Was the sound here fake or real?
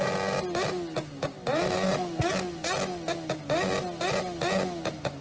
real